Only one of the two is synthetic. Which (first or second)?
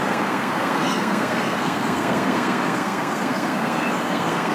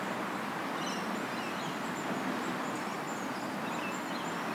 first